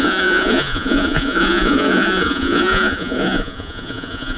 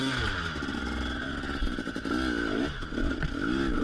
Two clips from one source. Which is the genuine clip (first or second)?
second